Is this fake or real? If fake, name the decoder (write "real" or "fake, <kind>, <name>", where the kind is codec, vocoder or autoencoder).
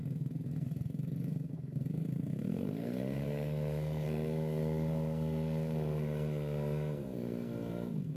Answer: fake, codec, SNAC